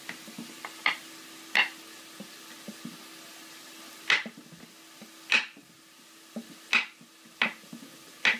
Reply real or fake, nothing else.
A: real